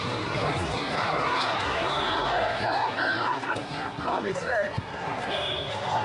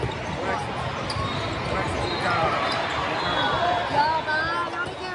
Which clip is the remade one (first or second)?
first